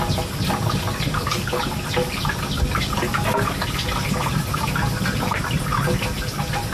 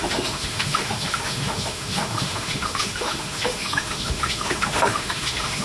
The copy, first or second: second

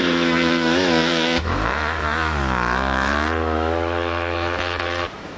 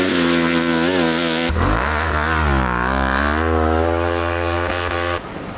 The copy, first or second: first